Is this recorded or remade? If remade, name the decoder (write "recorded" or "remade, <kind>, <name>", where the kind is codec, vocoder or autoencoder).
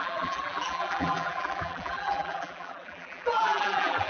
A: remade, vocoder, BigVGAN v2